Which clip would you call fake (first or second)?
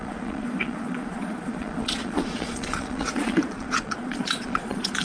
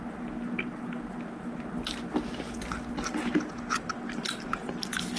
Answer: first